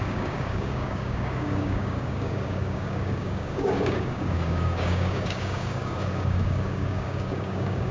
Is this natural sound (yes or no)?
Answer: no